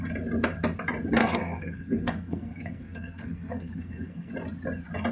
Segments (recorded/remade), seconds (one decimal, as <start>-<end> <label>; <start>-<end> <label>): 0.0-1.2 recorded; 1.2-4.3 remade; 4.3-5.1 recorded